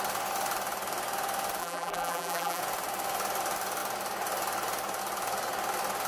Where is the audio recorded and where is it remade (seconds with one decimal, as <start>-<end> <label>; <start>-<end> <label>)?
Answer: 0.0-1.6 recorded; 1.6-2.6 remade; 2.6-6.1 recorded

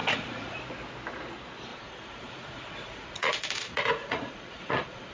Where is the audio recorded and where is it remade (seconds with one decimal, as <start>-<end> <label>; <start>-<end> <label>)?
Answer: 0.0-0.6 remade; 0.6-1.7 recorded; 1.7-5.1 remade

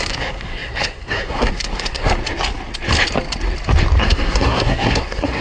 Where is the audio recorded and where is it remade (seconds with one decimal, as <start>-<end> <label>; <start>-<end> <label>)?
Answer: 0.0-2.2 remade; 2.2-4.0 recorded; 4.0-5.4 remade

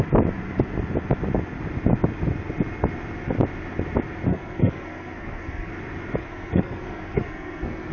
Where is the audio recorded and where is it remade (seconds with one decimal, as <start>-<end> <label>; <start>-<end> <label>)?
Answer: 0.0-4.3 recorded; 4.3-5.7 remade; 5.7-6.2 recorded; 6.2-7.9 remade

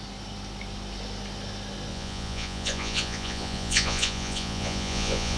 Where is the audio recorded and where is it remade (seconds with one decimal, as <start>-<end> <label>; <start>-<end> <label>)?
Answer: 0.0-1.9 recorded; 1.9-5.4 remade